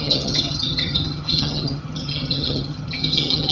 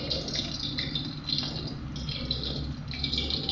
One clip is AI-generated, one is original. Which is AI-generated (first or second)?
first